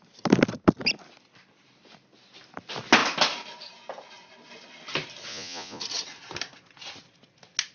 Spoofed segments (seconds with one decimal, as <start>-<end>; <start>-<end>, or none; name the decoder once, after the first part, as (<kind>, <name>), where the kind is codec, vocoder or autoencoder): 5.3-5.8 (vocoder, Vocos)